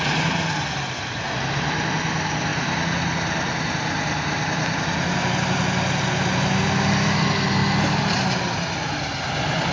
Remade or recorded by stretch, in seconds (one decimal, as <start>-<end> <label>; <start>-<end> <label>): 0.0-9.7 recorded